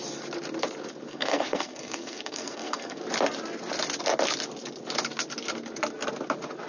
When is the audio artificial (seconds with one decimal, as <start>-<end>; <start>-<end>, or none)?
1.1-3.0